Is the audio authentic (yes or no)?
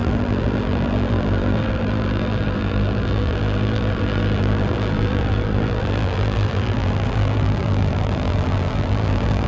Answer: no